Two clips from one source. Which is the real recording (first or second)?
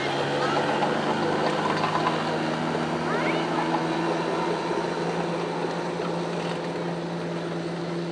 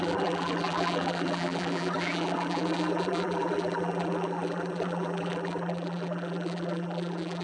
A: first